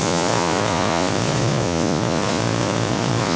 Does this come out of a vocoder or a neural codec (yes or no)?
yes